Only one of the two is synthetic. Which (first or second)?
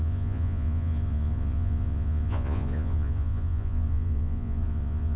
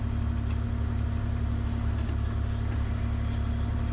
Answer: first